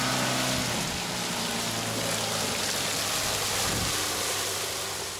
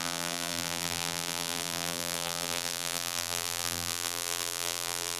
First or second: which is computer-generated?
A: second